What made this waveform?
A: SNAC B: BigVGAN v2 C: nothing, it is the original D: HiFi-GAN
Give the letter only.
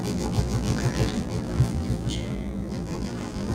B